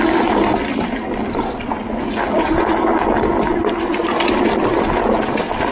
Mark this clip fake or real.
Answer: real